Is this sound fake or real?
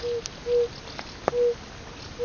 real